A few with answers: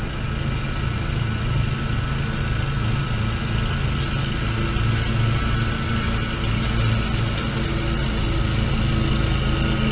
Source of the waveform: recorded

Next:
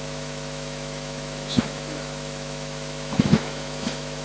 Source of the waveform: remade